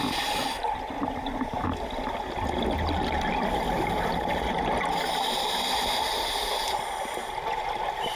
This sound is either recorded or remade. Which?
recorded